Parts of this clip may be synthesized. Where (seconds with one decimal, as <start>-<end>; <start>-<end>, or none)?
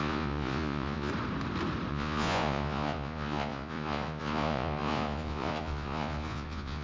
0.0-1.1; 1.9-6.8